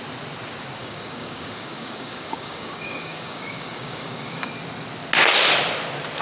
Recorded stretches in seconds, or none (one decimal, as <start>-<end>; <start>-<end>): 0.0-0.8; 4.5-6.2